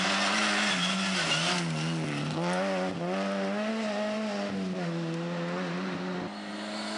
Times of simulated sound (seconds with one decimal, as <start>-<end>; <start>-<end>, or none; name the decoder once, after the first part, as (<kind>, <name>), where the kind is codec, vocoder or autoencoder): none